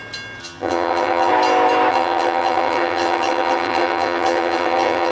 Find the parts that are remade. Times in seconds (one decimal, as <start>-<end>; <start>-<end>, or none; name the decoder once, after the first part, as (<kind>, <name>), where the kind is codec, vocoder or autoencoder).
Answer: 0.4-1.3 (vocoder, HiFi-GAN); 1.9-5.1